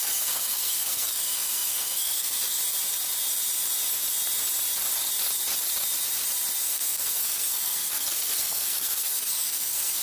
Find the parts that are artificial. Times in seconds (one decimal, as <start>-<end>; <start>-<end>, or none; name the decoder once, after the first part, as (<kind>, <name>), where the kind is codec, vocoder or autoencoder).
0.0-2.6 (codec, SNAC); 6.6-10.0

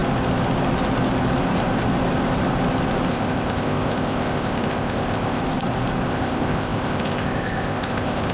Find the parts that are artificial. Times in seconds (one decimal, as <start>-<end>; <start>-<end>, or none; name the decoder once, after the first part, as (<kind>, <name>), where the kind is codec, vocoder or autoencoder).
3.1-5.4 (codec, ZipCodec); 6.1-8.3

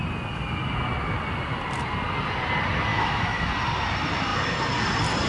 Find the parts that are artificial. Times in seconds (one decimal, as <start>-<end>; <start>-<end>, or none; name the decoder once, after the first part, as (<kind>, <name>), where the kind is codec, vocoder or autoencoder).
2.9-3.5 (autoencoder, DAC-VAE)

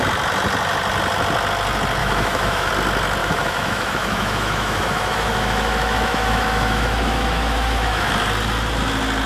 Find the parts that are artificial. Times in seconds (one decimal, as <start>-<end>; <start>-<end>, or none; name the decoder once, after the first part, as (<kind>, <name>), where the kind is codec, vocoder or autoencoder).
2.0-2.7 (autoencoder, DAC-VAE); 3.2-8.1

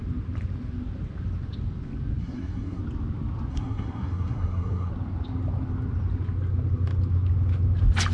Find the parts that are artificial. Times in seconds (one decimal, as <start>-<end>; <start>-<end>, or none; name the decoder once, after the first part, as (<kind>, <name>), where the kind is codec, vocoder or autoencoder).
2.2-2.8 (codec, SNAC); 3.5-4.9

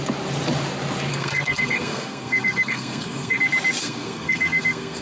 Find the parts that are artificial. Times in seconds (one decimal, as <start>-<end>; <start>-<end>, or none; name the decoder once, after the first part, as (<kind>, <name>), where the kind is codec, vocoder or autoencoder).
1.1-3.4 (codec, SNAC); 3.8-5.0